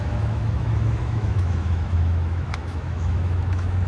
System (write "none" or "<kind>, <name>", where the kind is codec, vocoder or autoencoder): autoencoder, DAC-VAE